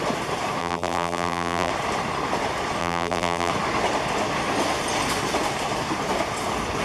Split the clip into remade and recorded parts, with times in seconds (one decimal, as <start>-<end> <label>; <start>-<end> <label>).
0.0-0.6 recorded; 0.6-1.7 remade; 1.7-2.8 recorded; 2.8-3.5 remade; 3.5-6.8 recorded